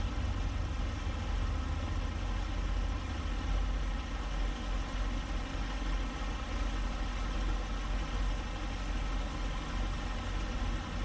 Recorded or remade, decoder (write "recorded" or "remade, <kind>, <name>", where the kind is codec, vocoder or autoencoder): recorded